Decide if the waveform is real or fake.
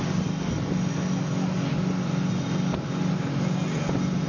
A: real